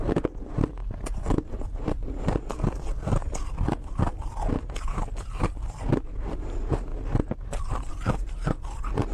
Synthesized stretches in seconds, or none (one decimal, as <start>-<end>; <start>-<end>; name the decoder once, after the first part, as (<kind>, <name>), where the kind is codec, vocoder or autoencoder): 0.8-6.0 (vocoder, BigVGAN v2)